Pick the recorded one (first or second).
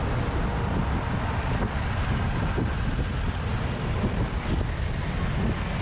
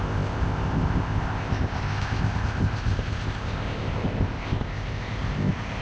first